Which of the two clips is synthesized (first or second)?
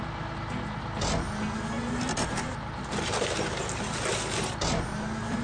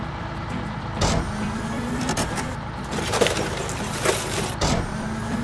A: second